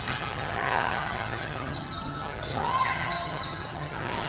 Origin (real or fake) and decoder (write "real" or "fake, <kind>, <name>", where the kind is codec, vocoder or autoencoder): fake, vocoder, HiFi-GAN